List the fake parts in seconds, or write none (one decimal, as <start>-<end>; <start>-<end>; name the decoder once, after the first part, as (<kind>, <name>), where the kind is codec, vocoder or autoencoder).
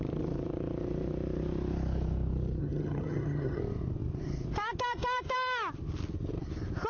2.6-3.6 (vocoder, HiFi-GAN)